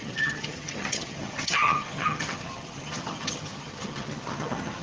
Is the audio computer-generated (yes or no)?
yes